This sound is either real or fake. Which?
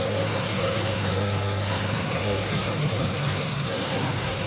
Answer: fake